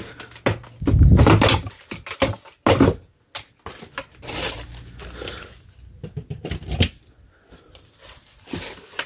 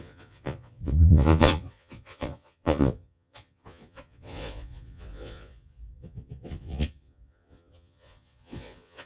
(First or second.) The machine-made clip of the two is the second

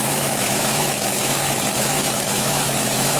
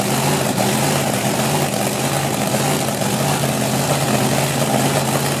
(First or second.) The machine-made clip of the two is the first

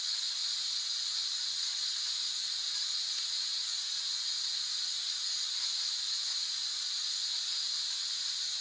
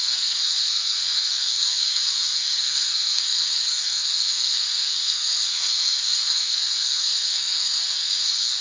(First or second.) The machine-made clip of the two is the second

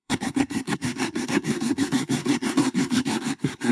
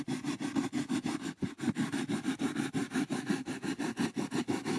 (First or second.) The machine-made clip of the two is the first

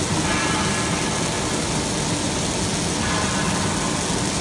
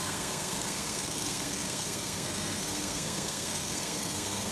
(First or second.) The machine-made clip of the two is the second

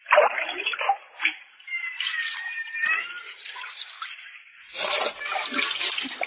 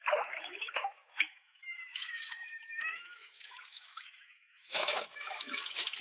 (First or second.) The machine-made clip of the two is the second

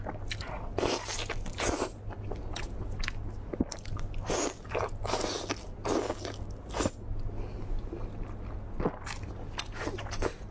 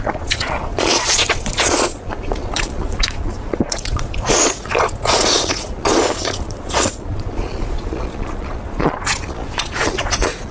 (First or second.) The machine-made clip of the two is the second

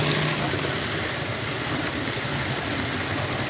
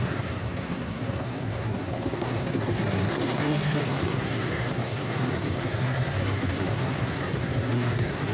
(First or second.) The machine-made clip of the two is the second